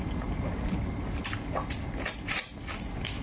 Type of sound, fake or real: real